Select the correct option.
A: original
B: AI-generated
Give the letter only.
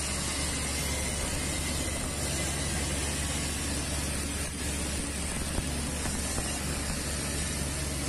A